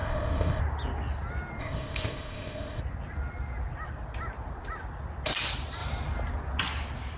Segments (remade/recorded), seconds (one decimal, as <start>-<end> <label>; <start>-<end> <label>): 0.0-0.6 remade; 0.6-1.6 recorded; 1.6-2.8 remade; 2.8-7.2 recorded